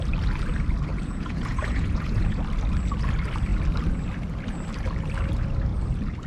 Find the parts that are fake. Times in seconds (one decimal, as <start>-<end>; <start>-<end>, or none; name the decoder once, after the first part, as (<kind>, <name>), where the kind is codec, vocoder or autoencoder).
0.9-2.4 (vocoder, Vocos)